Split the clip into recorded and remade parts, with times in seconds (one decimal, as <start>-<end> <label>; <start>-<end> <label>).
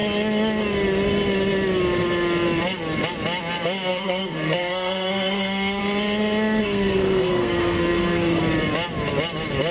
0.0-3.9 recorded; 3.9-5.8 remade; 5.8-6.6 recorded; 6.6-8.4 remade; 8.4-9.7 recorded